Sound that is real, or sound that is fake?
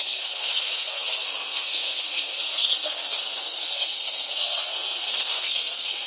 fake